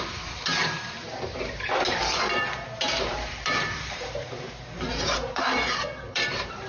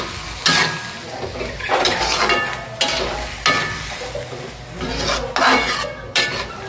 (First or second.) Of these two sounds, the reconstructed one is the first